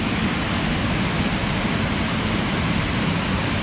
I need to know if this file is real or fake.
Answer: real